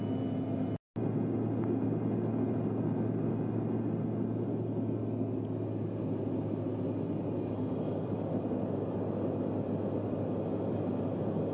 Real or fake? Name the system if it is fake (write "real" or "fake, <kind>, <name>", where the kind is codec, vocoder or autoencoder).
real